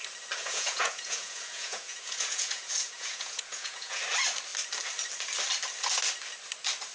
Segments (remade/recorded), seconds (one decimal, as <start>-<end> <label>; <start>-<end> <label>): 0.0-0.4 recorded; 0.4-4.0 remade; 4.0-6.9 recorded

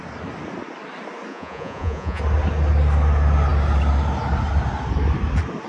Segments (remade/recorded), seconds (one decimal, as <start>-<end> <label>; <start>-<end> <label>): 0.0-1.3 recorded; 1.3-2.2 remade; 2.2-5.7 recorded

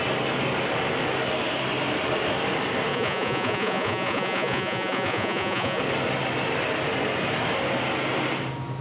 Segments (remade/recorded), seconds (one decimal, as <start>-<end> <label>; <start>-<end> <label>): 0.0-2.9 recorded; 2.9-5.8 remade; 5.8-8.8 recorded